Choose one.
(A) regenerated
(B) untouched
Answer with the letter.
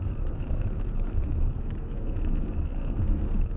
A